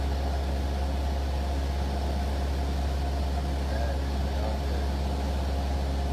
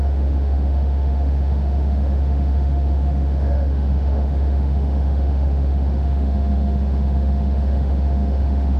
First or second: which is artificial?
second